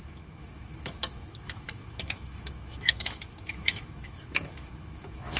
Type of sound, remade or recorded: remade